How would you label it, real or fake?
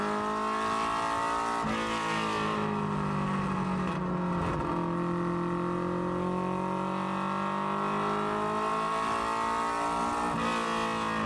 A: real